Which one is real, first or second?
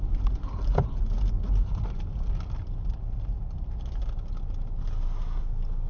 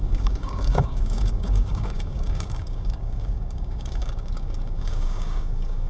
first